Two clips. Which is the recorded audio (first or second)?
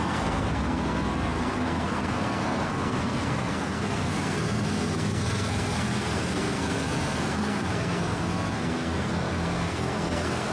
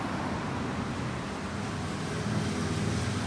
second